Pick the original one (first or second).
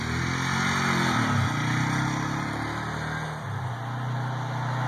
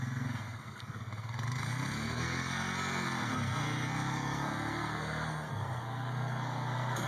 first